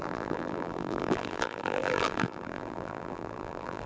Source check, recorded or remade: remade